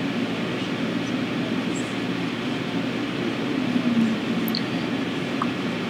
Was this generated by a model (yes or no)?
no